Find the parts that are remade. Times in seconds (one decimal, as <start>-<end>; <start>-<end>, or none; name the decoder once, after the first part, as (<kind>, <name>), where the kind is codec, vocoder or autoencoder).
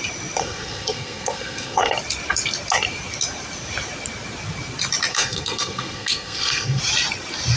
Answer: 0.4-1.9 (codec, SNAC); 5.1-6.8